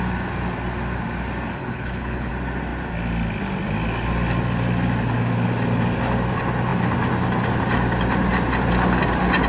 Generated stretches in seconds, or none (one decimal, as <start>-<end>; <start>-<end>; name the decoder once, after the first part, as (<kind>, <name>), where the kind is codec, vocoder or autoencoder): 1.5-2.3 (codec, HILCodec)